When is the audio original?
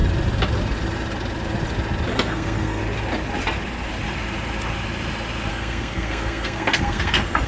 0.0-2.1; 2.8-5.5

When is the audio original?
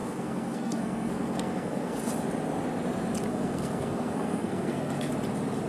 2.1-3.3; 5.1-5.7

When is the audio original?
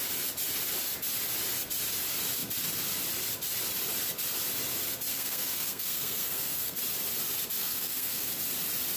0.0-5.1; 6.8-7.6; 8.3-9.0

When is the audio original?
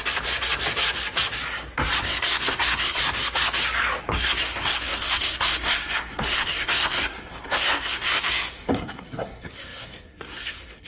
0.0-2.0; 3.0-4.0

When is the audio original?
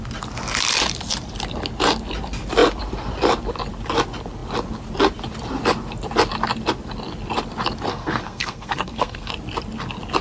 0.0-7.9; 9.3-10.2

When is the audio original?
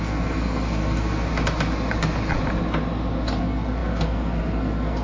1.3-3.4